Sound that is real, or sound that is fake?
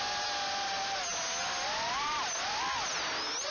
real